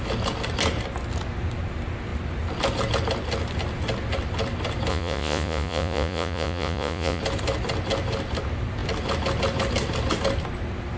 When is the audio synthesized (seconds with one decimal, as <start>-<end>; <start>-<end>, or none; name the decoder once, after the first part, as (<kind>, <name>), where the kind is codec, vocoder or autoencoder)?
4.9-7.2 (vocoder, Vocos)